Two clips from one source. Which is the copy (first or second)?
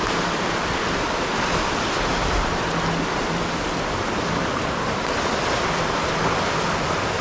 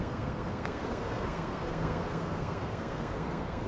second